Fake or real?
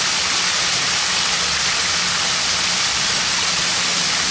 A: real